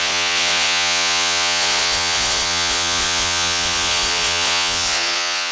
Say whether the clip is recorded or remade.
remade